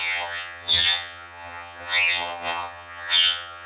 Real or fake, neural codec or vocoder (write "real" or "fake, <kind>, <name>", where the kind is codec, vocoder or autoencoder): fake, vocoder, HiFi-GAN